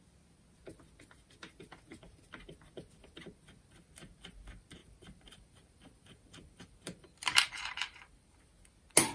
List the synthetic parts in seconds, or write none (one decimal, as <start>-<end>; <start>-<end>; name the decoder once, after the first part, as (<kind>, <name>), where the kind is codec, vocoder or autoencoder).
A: 4.8-8.5 (vocoder, BigVGAN v2)